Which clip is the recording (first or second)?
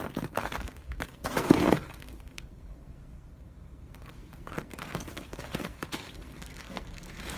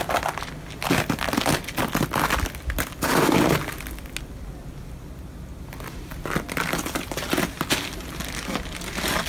second